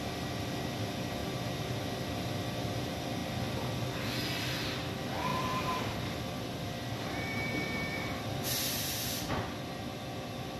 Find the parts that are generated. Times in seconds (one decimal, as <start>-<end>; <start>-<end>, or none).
5.3-9.3